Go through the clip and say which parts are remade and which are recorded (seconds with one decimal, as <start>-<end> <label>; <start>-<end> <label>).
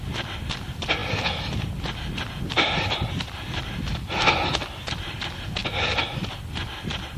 0.0-7.2 recorded